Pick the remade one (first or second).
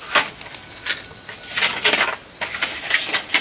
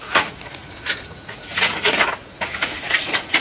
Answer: second